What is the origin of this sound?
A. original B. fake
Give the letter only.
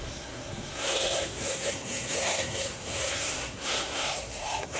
B